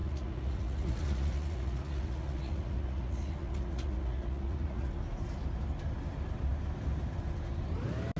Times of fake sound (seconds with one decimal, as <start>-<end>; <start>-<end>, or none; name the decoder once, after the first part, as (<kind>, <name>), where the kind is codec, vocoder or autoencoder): 0.0-4.9 (vocoder, Vocos)